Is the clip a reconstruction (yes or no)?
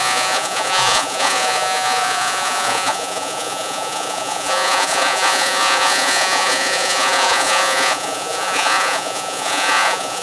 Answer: yes